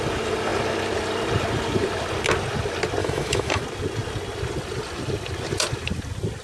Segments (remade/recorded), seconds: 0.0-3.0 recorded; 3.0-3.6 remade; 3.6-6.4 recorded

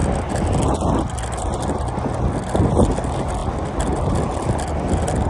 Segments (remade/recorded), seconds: 0.0-5.3 recorded

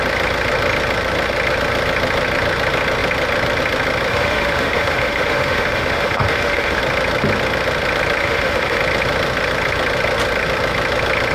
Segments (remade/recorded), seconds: 0.0-4.1 recorded; 4.1-6.8 remade; 6.8-8.2 recorded; 8.2-8.8 remade; 8.8-11.3 recorded